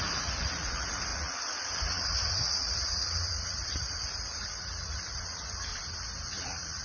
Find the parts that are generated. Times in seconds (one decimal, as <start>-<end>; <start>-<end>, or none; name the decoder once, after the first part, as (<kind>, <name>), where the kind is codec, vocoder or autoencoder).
0.0-5.7 (vocoder, Vocos); 6.3-6.8